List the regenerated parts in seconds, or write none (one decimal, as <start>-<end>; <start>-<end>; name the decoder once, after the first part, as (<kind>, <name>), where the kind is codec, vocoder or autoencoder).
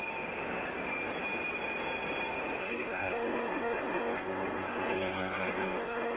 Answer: 2.6-6.2 (codec, SNAC)